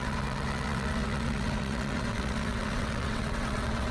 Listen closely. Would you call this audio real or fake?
fake